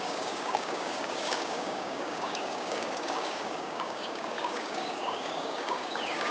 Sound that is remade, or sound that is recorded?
remade